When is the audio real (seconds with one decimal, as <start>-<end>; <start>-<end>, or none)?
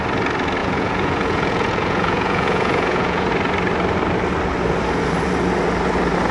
0.0-0.6; 3.3-6.3